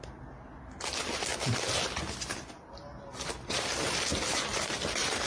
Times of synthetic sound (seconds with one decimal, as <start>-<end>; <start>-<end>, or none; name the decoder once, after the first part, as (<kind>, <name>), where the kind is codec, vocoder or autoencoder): none